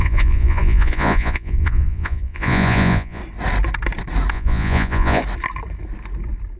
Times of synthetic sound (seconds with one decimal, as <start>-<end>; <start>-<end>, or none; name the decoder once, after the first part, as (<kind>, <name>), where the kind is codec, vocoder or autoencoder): 0.0-3.2 (vocoder, Vocos); 4.3-5.2